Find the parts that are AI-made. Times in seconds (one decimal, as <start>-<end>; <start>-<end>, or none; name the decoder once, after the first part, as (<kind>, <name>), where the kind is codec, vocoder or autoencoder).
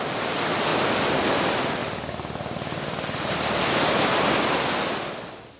0.7-1.3 (vocoder, BigVGAN v2); 1.8-4.2